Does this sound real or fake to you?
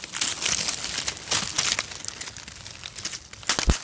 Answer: real